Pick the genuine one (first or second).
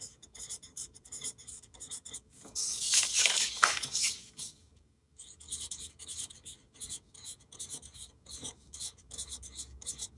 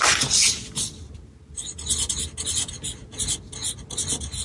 second